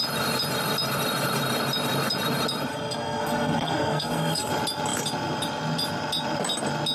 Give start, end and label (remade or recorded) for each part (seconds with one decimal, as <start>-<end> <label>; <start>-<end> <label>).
0.0-2.7 recorded; 2.7-4.5 remade; 4.5-6.9 recorded